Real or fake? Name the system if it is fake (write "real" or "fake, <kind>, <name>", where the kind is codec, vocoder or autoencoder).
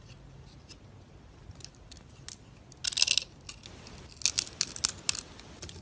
real